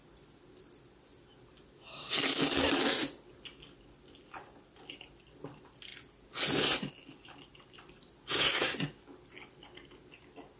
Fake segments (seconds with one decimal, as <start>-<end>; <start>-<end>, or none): none